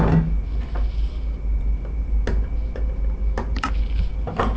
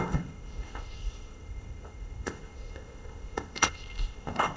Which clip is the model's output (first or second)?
second